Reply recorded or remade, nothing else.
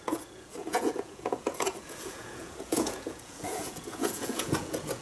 remade